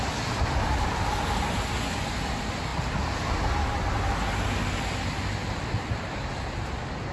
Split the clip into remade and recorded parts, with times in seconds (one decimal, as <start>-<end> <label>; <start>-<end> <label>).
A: 0.0-7.1 recorded